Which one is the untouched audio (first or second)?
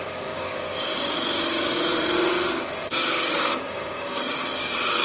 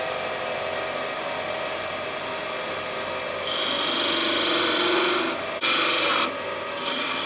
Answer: second